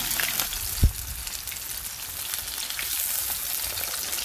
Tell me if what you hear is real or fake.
real